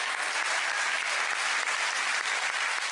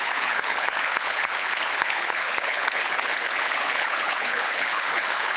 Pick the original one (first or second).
first